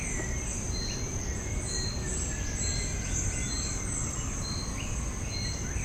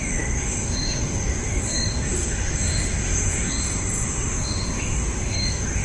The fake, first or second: second